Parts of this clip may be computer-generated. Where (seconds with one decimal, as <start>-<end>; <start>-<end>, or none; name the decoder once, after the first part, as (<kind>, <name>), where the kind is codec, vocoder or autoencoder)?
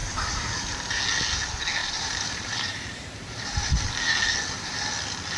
0.0-1.0 (vocoder, BigVGAN v2); 1.8-3.9